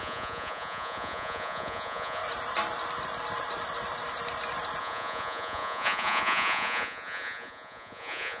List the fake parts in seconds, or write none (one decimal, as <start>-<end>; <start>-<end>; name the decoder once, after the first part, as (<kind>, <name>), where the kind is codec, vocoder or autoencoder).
0.0-2.2 (vocoder, Vocos); 4.8-8.4